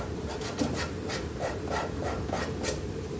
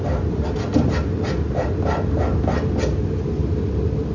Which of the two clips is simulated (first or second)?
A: first